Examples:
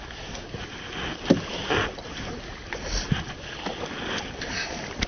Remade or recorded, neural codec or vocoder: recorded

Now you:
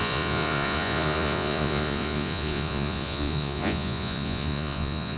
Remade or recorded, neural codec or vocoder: remade, vocoder, Vocos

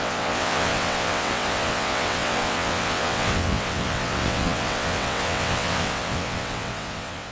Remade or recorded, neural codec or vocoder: remade, vocoder, WaveNeXt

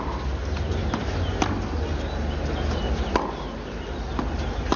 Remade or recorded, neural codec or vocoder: recorded